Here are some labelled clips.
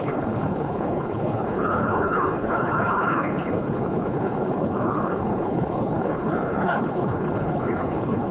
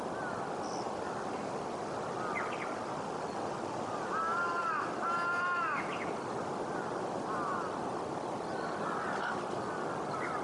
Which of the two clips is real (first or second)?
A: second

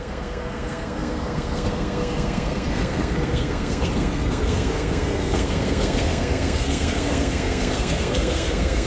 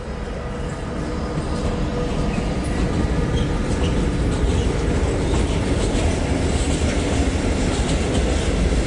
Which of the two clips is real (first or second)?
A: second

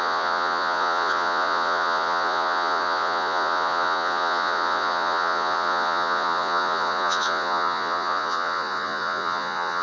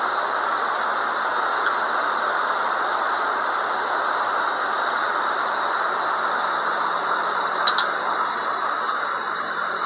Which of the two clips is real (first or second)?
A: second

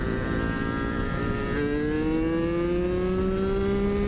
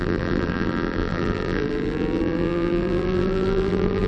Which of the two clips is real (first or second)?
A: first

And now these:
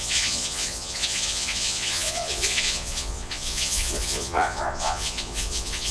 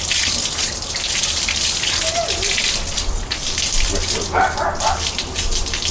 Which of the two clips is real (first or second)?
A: second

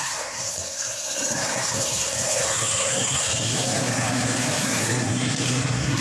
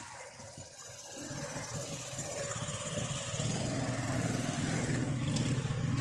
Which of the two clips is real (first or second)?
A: second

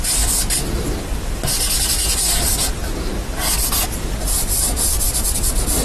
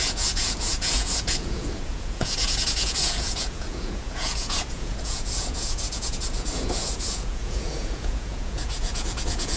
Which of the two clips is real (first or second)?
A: first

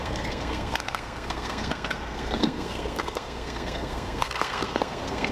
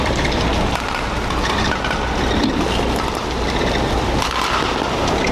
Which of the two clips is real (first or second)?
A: second